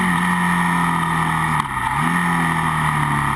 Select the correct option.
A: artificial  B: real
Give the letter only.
B